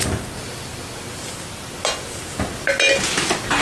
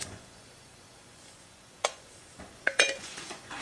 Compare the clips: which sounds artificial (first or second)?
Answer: second